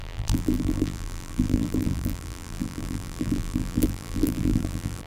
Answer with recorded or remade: remade